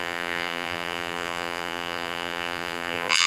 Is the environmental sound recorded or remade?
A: remade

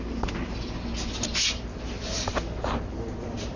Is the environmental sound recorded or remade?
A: recorded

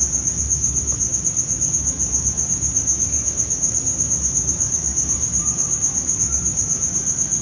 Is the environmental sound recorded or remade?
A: remade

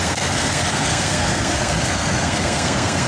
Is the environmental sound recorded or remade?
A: remade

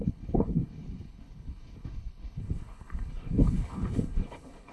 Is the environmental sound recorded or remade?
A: remade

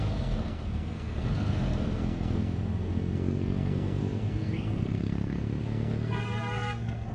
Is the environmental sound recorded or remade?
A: remade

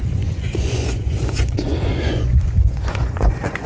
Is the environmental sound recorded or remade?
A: remade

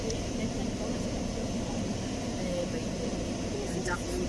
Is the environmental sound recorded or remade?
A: recorded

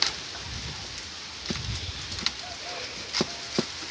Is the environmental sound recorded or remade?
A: recorded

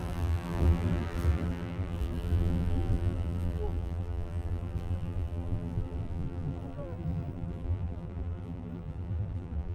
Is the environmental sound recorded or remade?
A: remade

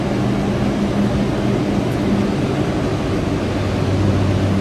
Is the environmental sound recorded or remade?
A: recorded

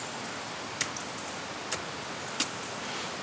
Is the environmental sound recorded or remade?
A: recorded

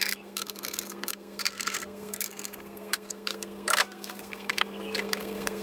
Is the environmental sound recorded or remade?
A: remade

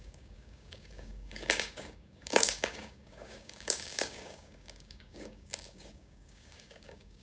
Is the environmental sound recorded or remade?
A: remade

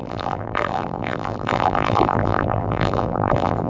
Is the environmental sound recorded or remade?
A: remade